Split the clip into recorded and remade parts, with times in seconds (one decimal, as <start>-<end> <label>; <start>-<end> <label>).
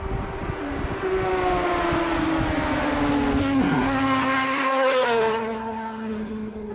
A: 0.0-3.4 recorded; 3.4-6.7 remade